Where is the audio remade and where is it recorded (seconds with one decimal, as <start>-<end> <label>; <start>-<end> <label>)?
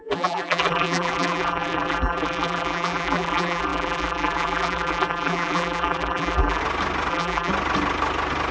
0.0-6.6 remade; 6.6-7.1 recorded; 7.1-7.5 remade; 7.5-8.5 recorded